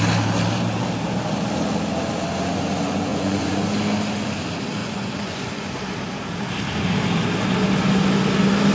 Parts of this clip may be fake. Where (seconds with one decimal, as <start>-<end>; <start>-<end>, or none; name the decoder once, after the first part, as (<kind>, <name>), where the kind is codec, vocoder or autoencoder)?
3.1-3.6 (vocoder, Vocos); 4.8-5.7